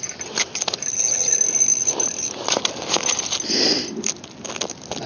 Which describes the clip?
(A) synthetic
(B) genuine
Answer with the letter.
B